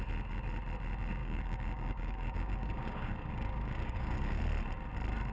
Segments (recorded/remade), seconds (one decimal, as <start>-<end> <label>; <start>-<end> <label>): 0.0-1.2 recorded; 1.2-4.4 remade; 4.4-5.3 recorded